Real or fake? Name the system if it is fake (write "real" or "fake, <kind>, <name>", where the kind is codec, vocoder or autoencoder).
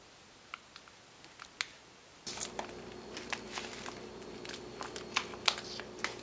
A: real